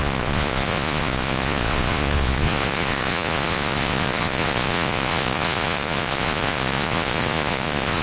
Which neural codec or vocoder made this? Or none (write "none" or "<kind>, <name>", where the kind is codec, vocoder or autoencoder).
vocoder, Vocos